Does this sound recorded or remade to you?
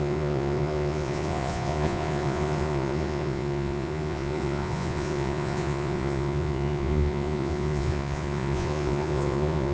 remade